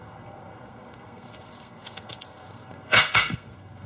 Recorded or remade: remade